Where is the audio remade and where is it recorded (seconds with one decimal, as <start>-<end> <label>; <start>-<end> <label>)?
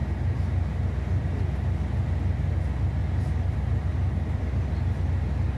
0.0-3.0 recorded; 3.0-4.7 remade; 4.7-5.6 recorded